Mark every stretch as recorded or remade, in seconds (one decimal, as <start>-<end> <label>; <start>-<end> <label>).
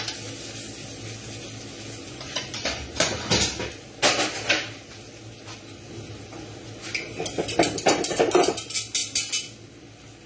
0.0-2.1 recorded; 2.1-3.3 remade; 3.3-10.3 recorded